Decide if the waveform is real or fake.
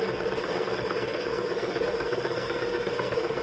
fake